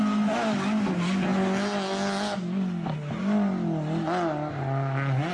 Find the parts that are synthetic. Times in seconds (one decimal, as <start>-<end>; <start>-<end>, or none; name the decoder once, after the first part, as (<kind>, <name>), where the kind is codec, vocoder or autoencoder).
none